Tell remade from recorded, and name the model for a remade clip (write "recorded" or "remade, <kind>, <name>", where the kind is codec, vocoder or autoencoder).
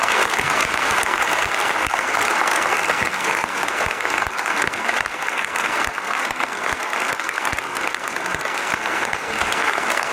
remade, codec, SNAC